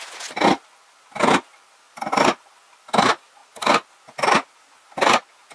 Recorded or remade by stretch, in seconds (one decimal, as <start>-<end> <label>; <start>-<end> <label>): 0.0-5.5 recorded